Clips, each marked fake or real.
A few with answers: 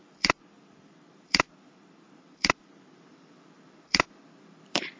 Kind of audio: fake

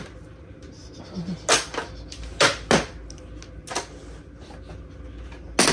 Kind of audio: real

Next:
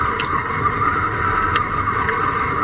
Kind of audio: real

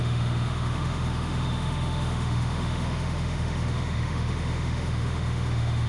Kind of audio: fake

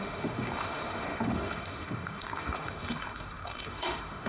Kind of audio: fake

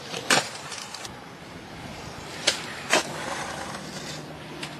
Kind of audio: fake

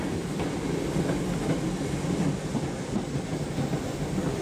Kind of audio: real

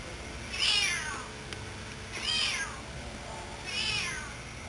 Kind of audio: real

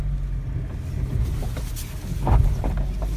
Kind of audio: real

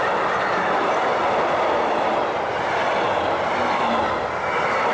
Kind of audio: real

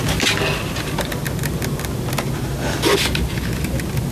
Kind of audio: real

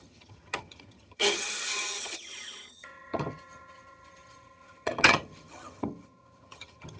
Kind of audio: fake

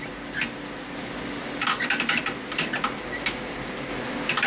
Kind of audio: real